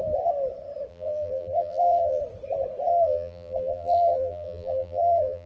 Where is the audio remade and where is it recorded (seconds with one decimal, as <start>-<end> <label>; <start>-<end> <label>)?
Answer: 0.0-0.9 recorded; 0.9-2.2 remade; 2.2-2.9 recorded; 2.9-5.5 remade